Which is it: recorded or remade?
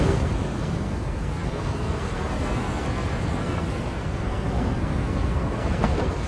remade